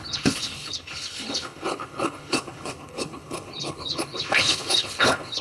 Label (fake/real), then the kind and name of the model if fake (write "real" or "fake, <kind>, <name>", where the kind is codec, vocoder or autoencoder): fake, codec, HILCodec